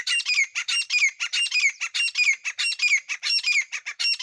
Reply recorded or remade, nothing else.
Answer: remade